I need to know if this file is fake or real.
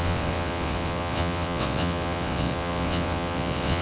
fake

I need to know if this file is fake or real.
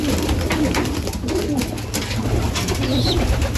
real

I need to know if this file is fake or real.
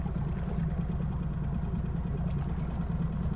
real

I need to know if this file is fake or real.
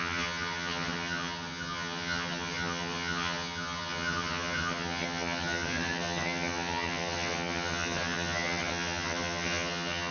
fake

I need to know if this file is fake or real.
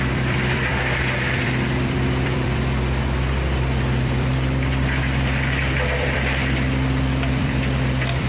fake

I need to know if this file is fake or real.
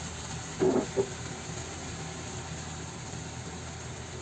real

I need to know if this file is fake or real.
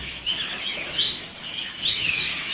fake